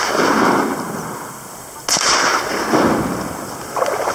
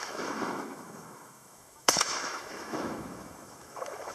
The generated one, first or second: second